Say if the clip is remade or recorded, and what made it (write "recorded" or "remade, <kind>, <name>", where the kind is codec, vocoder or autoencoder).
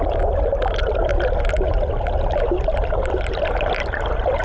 recorded